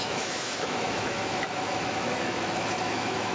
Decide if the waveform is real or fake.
fake